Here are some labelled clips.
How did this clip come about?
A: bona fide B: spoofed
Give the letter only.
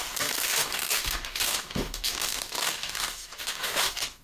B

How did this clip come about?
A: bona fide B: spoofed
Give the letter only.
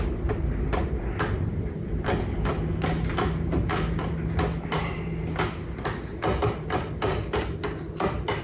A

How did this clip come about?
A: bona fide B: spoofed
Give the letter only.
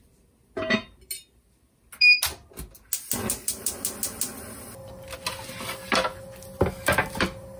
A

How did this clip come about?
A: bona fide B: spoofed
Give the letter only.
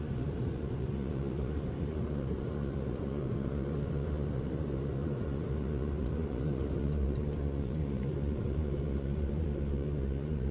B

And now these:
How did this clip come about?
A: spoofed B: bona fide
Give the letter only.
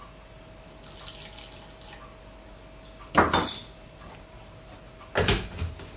B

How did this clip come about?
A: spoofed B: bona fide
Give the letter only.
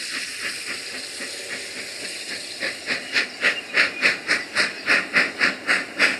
B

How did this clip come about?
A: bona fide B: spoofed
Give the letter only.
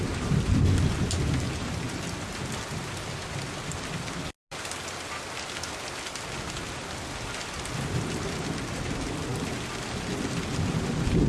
A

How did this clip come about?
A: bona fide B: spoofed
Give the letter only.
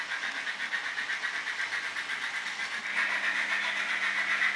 A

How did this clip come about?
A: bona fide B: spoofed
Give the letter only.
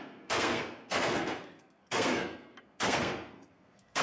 B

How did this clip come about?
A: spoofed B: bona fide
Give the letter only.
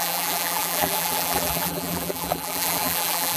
A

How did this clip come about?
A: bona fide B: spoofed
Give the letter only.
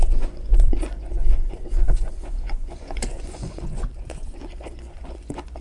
B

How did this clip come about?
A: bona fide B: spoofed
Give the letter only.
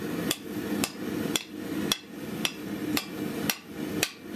A